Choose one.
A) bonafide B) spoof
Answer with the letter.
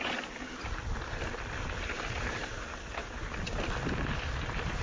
A